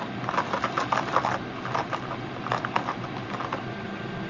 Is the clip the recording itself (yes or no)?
yes